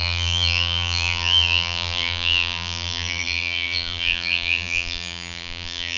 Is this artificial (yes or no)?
yes